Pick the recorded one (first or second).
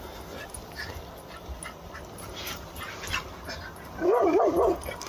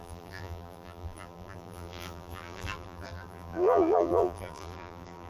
first